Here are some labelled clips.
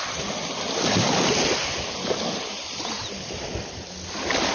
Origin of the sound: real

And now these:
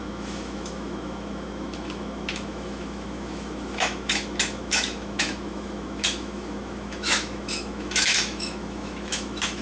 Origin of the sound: fake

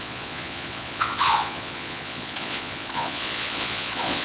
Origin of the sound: fake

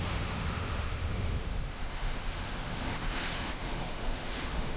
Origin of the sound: fake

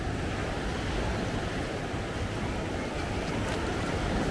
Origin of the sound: real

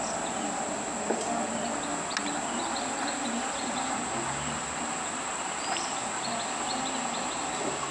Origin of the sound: real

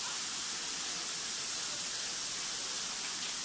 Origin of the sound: real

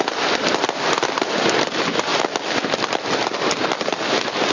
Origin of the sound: real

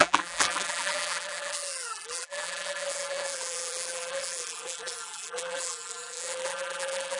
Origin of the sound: fake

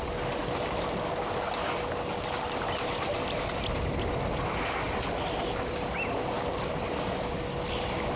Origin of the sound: real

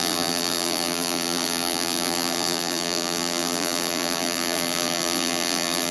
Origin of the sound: fake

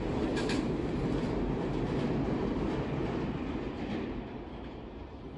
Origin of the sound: real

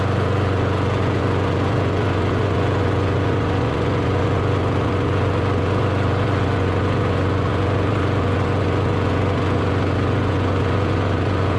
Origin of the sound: fake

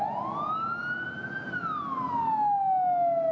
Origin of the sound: real